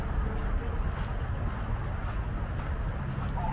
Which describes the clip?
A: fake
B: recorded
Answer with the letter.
B